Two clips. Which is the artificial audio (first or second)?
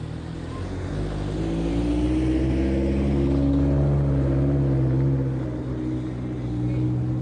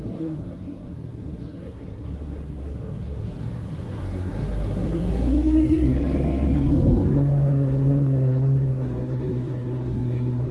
second